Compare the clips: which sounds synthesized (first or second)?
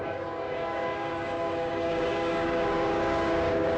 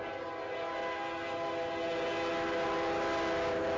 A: first